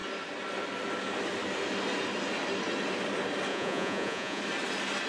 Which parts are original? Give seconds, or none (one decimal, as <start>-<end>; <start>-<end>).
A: 0.0-3.5; 4.4-5.1